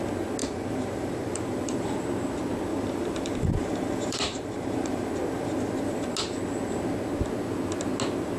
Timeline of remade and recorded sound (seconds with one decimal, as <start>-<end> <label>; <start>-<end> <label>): 0.0-0.4 recorded; 0.4-2.0 remade; 2.0-2.7 recorded; 2.7-5.1 remade; 5.1-8.4 recorded